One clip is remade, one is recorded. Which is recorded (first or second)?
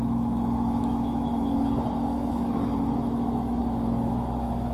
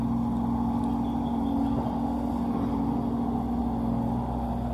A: second